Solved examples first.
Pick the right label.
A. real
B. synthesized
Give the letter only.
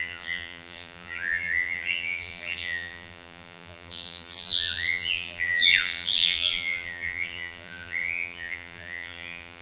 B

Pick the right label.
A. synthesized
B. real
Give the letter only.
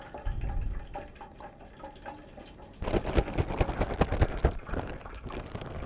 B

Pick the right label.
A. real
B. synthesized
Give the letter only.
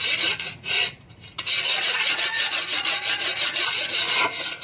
B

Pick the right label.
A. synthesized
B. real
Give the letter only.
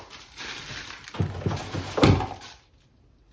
B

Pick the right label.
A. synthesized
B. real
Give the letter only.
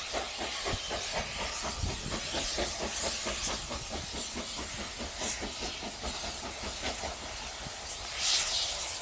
B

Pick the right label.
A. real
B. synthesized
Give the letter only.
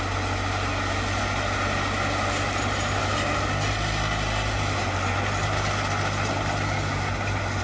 A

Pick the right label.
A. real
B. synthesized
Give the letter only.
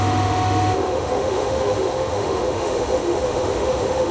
B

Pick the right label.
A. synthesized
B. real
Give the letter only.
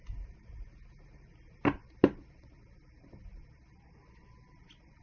B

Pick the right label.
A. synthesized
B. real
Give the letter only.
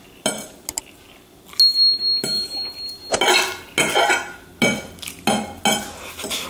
B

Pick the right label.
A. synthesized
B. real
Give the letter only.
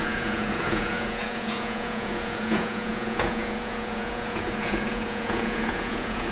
A